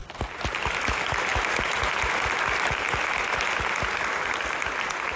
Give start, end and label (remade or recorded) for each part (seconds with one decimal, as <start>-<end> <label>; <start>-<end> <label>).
0.0-5.2 recorded